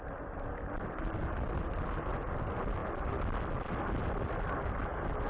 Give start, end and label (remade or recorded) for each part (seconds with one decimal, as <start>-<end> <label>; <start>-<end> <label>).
0.0-5.3 recorded